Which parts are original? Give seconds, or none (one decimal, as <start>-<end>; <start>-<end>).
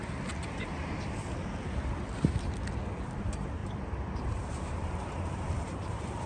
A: 0.0-3.2